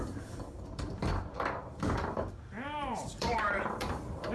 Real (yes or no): no